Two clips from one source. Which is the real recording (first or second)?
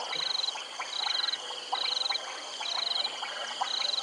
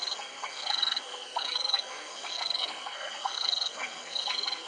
first